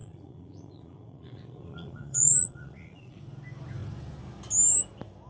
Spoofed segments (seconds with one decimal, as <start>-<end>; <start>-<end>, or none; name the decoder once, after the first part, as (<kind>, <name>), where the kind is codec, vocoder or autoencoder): 0.0-3.2 (vocoder, Vocos)